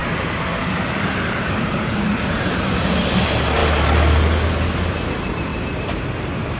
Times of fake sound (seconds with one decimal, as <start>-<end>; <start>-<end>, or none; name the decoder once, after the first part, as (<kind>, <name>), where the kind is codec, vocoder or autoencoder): 0.6-3.6 (vocoder, BigVGAN v2); 4.9-6.6